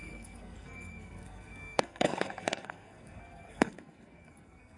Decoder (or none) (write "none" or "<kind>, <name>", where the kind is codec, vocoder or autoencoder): codec, SNAC